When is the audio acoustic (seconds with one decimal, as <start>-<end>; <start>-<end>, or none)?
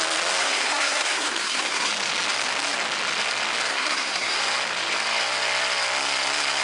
0.0-0.4; 1.9-3.7; 4.4-6.6